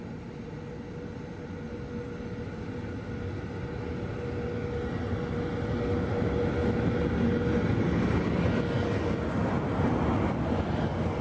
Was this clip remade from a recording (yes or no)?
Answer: no